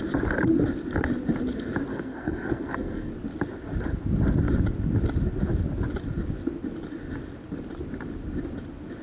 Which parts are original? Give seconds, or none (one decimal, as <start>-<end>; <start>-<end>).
0.0-1.9; 3.1-9.0